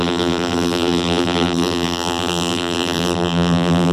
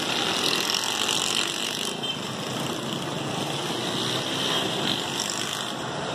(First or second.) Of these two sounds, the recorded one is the second